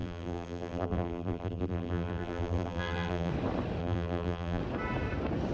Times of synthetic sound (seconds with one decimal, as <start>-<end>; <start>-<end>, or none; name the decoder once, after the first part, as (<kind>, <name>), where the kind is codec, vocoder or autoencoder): 0.0-3.3 (vocoder, BigVGAN v2); 3.8-4.6